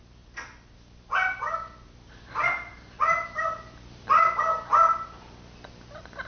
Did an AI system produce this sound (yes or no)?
no